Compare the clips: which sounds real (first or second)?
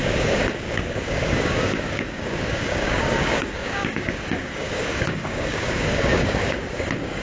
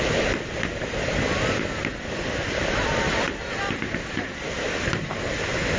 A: second